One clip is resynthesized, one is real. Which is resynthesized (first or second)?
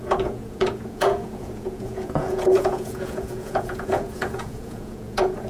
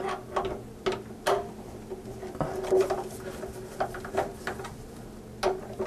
first